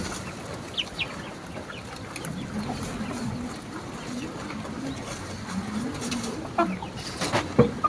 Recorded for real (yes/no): yes